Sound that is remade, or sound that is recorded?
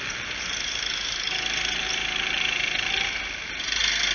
recorded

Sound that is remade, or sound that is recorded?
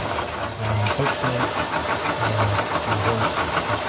recorded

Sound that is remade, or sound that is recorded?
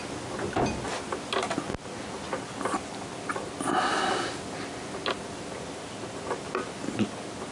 recorded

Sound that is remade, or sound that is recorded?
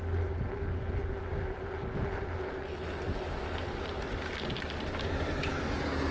recorded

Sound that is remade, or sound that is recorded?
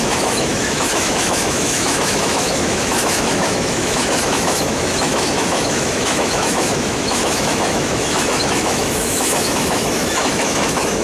remade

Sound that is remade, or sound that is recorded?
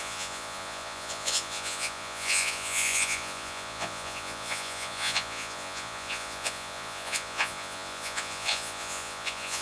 remade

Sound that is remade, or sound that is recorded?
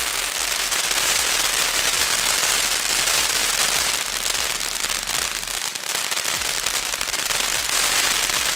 recorded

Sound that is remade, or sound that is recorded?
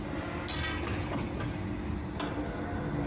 recorded